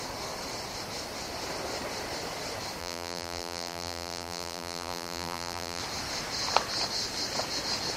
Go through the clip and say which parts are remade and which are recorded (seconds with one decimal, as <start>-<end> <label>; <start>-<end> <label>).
0.0-2.8 recorded; 2.8-5.8 remade; 5.8-8.0 recorded